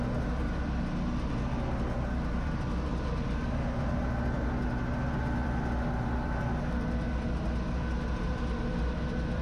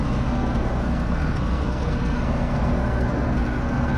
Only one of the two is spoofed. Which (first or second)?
second